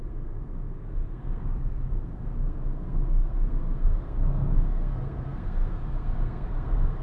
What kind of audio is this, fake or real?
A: fake